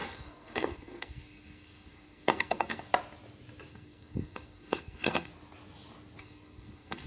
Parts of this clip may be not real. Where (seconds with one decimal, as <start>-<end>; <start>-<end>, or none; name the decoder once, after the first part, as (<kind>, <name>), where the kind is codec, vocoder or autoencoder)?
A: 0.0-2.9 (codec, SNAC); 3.7-5.3; 6.2-7.1